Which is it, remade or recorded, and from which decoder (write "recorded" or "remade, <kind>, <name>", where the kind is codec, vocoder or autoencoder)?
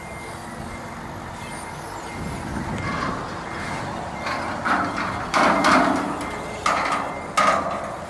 recorded